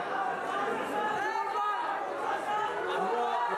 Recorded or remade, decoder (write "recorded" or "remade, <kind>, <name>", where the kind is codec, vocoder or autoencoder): recorded